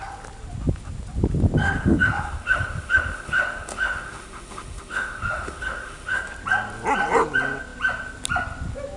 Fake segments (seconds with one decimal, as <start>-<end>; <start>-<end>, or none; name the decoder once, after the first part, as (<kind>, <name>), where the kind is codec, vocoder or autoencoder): 1.6-6.2 (autoencoder, DAC-VAE)